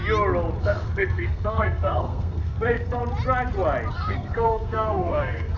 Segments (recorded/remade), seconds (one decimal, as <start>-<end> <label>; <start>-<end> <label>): 0.0-0.6 recorded; 0.6-3.0 remade; 3.0-3.9 recorded; 3.9-5.6 remade